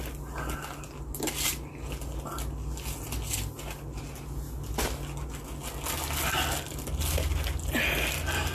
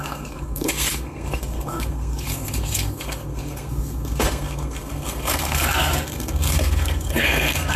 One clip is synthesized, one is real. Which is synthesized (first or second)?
second